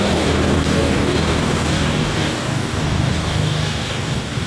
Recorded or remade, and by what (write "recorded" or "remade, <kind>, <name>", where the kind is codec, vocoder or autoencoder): remade, codec, DAC